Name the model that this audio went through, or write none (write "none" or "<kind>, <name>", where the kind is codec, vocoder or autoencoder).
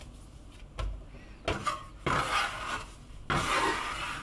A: none